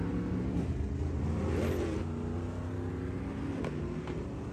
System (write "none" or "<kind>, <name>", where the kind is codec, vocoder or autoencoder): none